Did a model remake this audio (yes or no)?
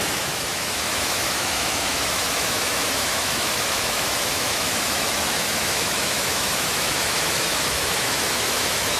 yes